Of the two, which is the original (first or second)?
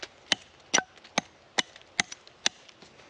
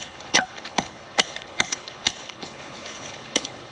first